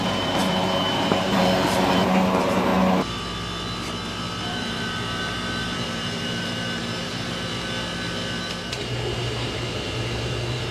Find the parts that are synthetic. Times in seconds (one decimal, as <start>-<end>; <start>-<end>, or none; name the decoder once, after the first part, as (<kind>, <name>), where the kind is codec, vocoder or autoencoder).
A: 0.0-2.7 (vocoder, BigVGAN v2); 4.4-7.5; 8.7-10.7